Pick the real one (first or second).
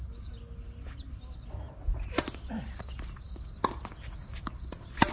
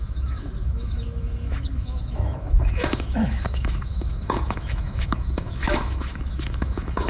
first